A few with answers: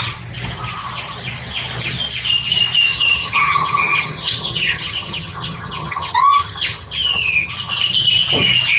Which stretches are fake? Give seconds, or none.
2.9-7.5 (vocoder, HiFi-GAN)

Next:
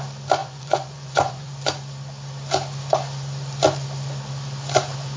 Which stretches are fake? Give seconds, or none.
0.4-1.5 (vocoder, Vocos)

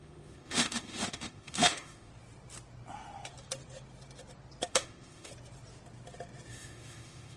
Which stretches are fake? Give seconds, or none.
0.0-2.1 (autoencoder, DAC-VAE); 4.7-5.3; 6.5-7.4